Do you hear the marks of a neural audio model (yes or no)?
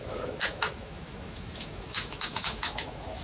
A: yes